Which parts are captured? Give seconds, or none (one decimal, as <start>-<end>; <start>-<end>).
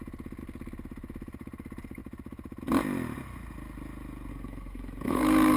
0.0-4.3